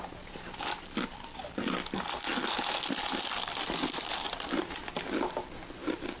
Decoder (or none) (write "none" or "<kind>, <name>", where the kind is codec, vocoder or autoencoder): none